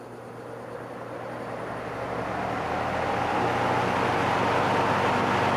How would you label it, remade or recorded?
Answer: recorded